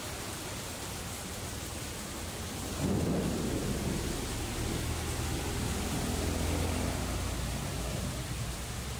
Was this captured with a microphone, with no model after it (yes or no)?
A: yes